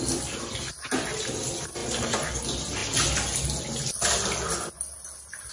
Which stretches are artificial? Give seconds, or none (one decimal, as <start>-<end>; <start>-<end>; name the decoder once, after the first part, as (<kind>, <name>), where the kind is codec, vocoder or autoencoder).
1.8-2.4 (vocoder, BigVGAN v2)